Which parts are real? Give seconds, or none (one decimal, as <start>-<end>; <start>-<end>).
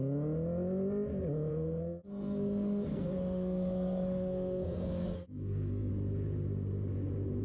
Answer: 0.0-1.5; 5.9-7.4